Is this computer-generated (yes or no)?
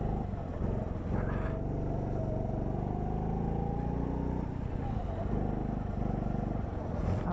no